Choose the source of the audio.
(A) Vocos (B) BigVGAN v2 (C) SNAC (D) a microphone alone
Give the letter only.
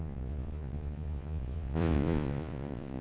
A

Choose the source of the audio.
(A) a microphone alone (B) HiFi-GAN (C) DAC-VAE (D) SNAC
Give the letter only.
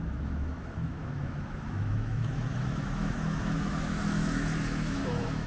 C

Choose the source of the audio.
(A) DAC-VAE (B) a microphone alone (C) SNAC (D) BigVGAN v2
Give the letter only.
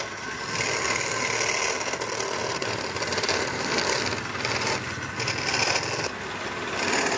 B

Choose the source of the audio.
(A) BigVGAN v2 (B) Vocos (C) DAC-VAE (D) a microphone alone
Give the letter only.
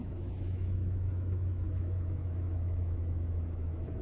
C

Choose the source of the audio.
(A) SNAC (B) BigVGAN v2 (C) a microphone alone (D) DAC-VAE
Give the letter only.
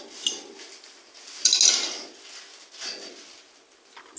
C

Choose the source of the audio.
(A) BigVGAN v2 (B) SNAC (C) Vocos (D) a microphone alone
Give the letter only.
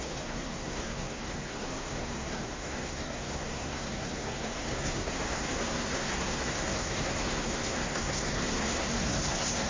B